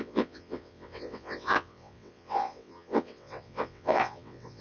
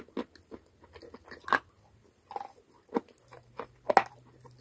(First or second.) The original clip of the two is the second